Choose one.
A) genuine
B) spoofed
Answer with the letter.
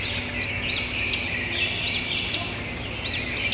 A